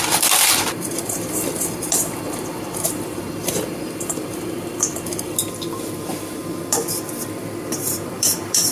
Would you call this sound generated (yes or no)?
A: yes